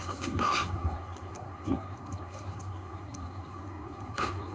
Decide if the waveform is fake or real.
fake